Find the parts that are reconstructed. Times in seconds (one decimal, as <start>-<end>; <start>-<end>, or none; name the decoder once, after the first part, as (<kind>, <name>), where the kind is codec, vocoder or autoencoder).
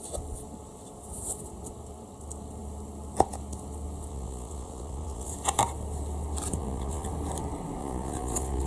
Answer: 4.1-5.3 (vocoder, Vocos); 6.6-7.1; 7.8-8.7